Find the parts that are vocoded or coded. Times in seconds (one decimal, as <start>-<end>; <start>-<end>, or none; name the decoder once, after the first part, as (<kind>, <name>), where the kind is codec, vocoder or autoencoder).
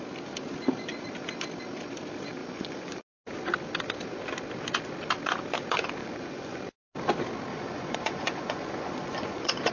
2.4-3.0 (vocoder, Vocos); 6.0-6.6; 7.5-9.7